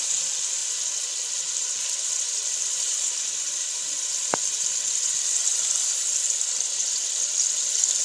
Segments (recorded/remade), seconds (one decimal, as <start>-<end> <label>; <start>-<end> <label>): 0.0-8.0 recorded